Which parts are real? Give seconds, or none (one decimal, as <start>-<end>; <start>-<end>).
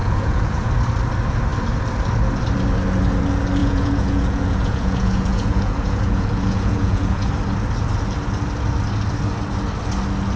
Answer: 0.7-3.6; 7.3-10.4